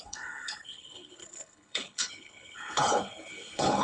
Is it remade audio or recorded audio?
remade